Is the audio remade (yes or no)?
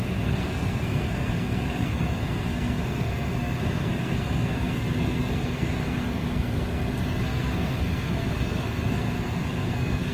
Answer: yes